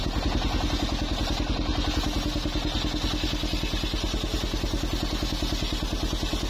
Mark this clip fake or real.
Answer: real